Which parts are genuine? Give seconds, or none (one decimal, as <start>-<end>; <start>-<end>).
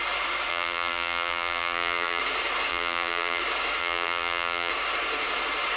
0.0-0.5; 2.2-2.7; 3.4-3.8; 4.7-5.8